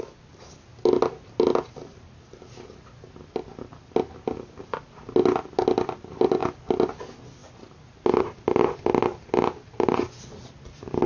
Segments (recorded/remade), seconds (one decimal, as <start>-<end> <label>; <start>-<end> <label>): 0.0-11.1 recorded